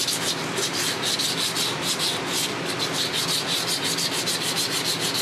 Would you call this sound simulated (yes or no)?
no